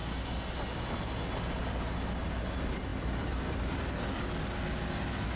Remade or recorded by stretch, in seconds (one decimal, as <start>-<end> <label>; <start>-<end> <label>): 0.0-2.9 recorded; 2.9-4.2 remade; 4.2-5.4 recorded